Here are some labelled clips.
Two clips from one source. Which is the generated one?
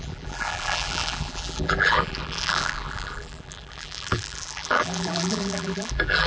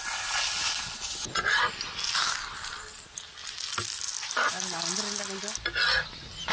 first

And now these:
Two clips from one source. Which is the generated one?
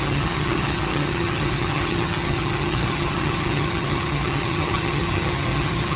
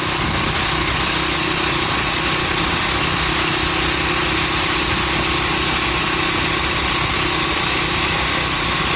first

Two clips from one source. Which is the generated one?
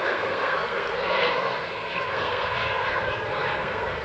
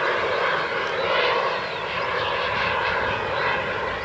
first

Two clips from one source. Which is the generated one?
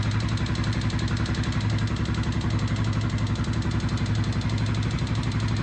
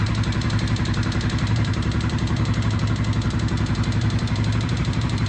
second